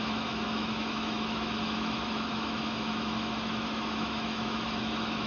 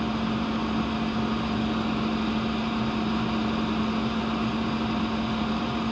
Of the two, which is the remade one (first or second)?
first